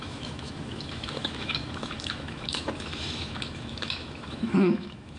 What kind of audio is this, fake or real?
fake